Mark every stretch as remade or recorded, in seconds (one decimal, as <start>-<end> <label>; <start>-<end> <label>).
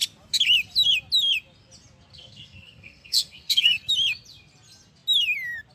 0.0-2.1 recorded; 2.1-3.9 remade; 3.9-5.7 recorded